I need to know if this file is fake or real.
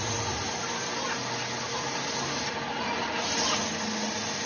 real